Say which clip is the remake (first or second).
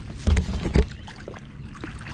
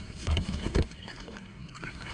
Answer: second